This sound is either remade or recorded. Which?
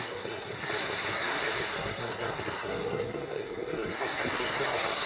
remade